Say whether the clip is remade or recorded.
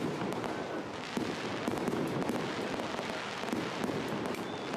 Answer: recorded